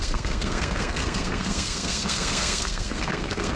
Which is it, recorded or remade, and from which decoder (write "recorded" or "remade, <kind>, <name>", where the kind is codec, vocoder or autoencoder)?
remade, codec, SNAC